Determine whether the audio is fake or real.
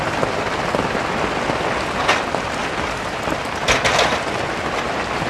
real